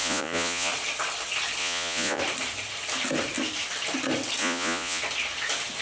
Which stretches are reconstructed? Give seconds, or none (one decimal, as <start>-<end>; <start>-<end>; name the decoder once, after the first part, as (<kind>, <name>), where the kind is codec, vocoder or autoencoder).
0.0-0.7 (vocoder, Vocos); 1.6-2.2; 4.4-5.0

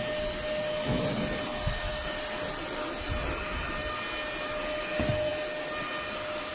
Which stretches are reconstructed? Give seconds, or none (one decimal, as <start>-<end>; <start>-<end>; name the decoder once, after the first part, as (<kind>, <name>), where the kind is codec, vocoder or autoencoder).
none

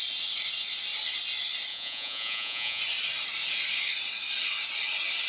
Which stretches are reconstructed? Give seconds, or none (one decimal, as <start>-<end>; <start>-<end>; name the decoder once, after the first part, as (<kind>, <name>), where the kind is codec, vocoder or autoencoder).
1.7-2.8 (vocoder, Vocos)

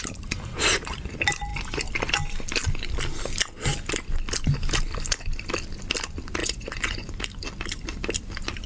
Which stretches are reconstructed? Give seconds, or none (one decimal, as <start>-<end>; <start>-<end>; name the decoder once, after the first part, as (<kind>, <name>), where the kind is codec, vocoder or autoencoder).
6.4-7.2 (vocoder, Vocos)

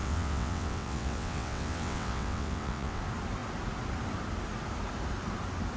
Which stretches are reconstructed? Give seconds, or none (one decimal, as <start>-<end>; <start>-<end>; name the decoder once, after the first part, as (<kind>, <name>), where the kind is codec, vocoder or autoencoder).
0.0-3.0 (vocoder, WaveNeXt)